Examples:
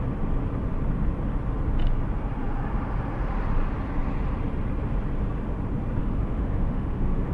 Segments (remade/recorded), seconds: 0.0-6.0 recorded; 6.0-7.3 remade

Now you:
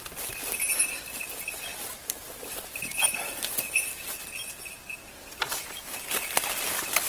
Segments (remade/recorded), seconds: 0.0-7.1 recorded